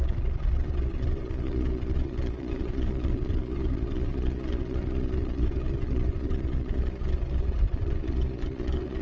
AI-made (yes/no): yes